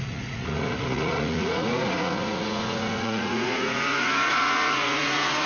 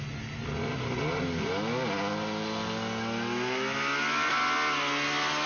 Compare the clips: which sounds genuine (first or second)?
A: second